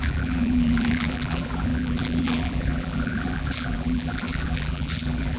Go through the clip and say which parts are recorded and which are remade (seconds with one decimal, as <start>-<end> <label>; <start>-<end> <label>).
0.0-5.4 remade